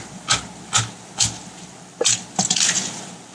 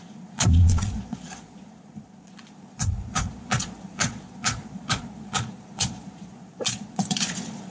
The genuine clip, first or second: first